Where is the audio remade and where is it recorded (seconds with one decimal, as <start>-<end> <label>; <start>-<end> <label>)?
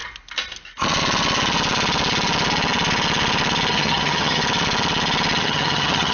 0.0-3.7 recorded; 3.7-4.4 remade; 4.4-5.4 recorded; 5.4-6.1 remade